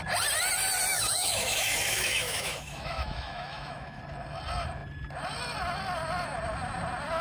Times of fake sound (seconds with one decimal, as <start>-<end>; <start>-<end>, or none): 0.9-4.0